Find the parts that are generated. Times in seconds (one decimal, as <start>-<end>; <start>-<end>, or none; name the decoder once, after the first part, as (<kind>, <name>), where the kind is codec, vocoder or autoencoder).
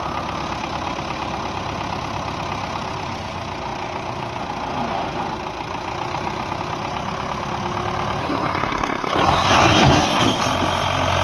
8.2-10.2 (codec, SNAC)